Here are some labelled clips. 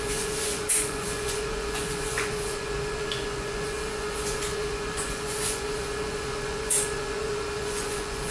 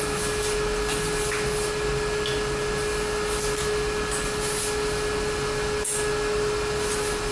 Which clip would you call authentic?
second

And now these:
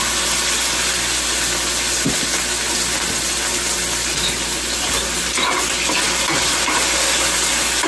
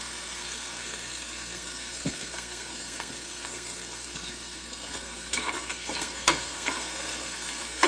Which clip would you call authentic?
first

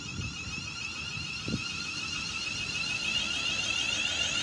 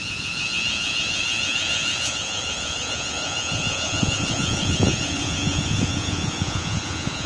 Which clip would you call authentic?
first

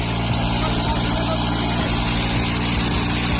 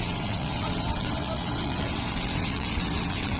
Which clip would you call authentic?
first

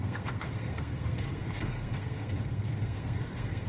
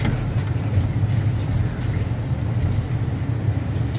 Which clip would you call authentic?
second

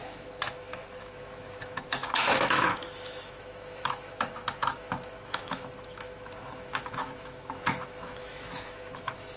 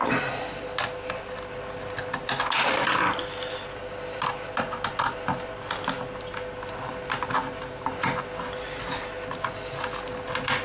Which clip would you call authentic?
second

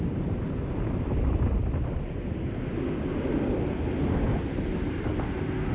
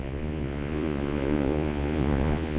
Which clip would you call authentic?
first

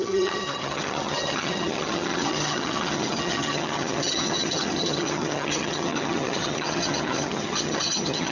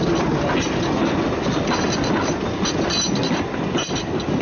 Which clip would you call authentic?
second